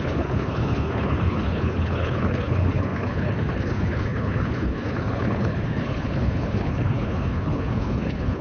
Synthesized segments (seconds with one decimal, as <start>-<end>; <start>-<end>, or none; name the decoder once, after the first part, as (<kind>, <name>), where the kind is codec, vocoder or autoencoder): 0.0-8.4 (codec, HILCodec)